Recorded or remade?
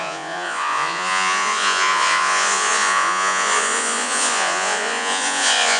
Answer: remade